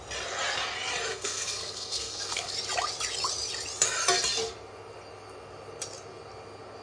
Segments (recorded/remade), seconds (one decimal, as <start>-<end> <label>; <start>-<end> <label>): 0.0-1.1 recorded; 1.1-2.5 remade; 2.5-6.8 recorded

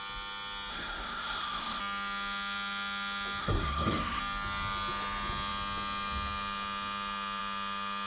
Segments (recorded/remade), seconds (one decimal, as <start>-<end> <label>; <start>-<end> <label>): 0.0-0.7 recorded; 0.7-1.8 remade; 1.8-3.4 recorded; 3.4-4.2 remade; 4.2-8.1 recorded

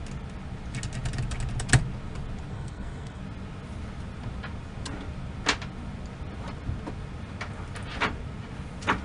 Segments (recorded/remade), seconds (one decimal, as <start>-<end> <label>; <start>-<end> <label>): 0.0-2.5 recorded; 2.5-3.2 remade; 3.2-9.0 recorded

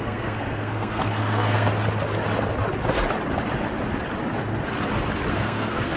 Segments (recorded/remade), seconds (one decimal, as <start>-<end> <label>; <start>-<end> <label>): 0.0-1.7 remade; 1.7-5.3 recorded; 5.3-6.0 remade

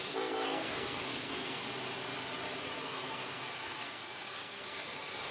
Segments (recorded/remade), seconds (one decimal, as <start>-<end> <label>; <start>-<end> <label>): 0.0-1.6 remade; 1.6-2.8 recorded; 2.8-5.3 remade

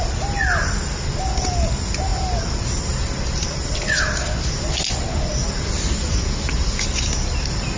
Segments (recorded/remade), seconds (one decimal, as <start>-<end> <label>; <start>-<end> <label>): 0.0-7.8 recorded